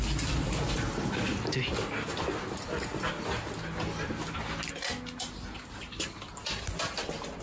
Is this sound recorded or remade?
recorded